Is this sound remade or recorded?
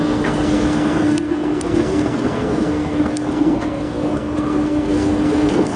remade